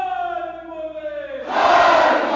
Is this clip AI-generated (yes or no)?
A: no